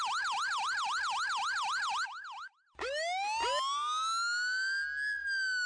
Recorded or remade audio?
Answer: recorded